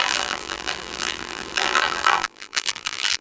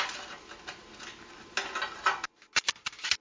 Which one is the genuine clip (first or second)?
second